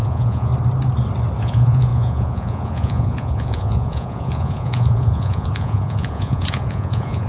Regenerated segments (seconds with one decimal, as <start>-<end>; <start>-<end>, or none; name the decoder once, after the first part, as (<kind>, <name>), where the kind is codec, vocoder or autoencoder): 0.0-0.5 (vocoder, Vocos); 1.4-7.3